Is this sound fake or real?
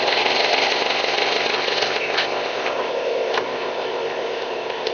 fake